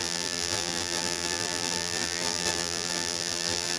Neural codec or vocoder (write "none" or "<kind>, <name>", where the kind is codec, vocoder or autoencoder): vocoder, BigVGAN v2